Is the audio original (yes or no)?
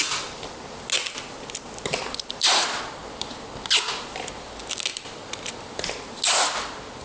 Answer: yes